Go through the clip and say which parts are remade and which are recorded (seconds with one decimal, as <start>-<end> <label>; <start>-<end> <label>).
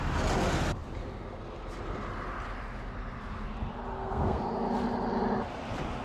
0.0-3.9 recorded; 3.9-4.4 remade; 4.4-6.0 recorded